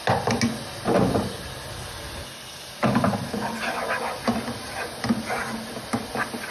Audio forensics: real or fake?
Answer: real